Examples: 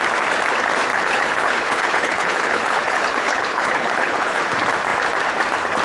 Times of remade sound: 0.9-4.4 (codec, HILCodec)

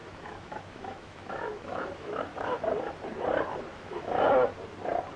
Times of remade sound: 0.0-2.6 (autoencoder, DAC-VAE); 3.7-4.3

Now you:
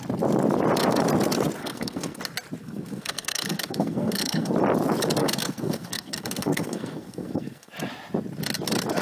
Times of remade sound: 1.6-2.2 (codec, SNAC); 2.6-4.5; 5.2-7.7

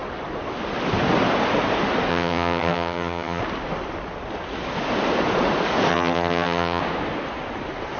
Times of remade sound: 2.1-3.4 (vocoder, HiFi-GAN); 5.9-6.8

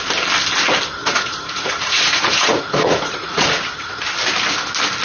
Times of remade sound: 1.0-4.0 (vocoder, Vocos)